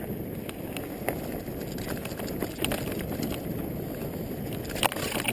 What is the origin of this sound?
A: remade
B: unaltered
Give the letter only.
B